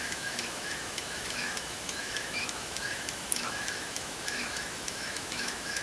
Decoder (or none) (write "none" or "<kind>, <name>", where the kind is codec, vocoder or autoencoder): autoencoder, DAC-VAE